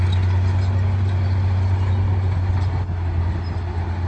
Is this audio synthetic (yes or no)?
no